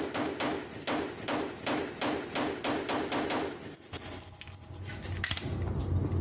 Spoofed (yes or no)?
no